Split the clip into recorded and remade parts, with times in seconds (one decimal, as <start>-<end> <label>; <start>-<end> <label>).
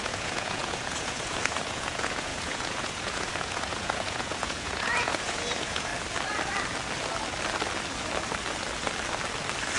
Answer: 0.0-5.9 remade; 5.9-9.8 recorded